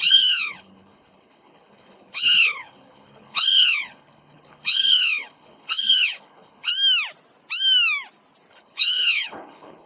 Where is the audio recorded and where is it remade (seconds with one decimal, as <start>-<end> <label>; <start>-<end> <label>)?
0.0-6.7 remade; 6.7-8.5 recorded; 8.5-9.9 remade